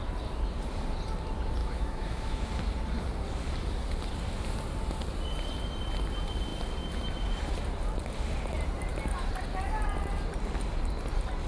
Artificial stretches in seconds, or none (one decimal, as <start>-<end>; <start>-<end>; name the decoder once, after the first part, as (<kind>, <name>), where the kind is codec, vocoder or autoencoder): 1.6-2.5 (autoencoder, DAC-VAE)

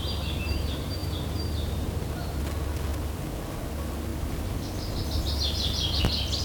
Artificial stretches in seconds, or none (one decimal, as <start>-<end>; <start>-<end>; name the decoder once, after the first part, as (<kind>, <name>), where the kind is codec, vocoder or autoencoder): 1.0-2.4 (vocoder, BigVGAN v2)

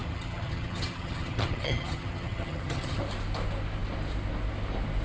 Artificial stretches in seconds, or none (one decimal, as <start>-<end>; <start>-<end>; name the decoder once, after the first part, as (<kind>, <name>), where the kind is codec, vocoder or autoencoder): 0.0-3.0 (vocoder, HiFi-GAN)

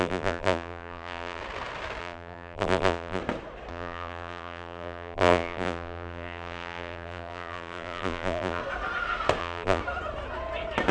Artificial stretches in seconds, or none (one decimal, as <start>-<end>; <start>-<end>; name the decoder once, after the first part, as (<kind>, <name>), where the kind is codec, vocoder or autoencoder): 0.0-1.4 (vocoder, BigVGAN v2); 2.0-3.2; 3.7-8.6; 9.4-9.8

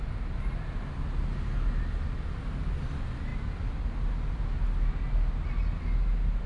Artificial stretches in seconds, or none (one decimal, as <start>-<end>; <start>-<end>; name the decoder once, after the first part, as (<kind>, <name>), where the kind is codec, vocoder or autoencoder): none

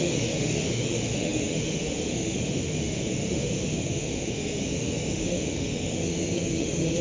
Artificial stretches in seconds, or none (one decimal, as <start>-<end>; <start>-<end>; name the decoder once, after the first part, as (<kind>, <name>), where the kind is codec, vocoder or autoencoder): 0.0-7.0 (autoencoder, DAC-VAE)